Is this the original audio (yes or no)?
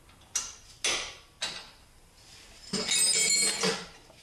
yes